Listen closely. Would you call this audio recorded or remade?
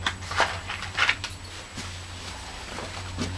recorded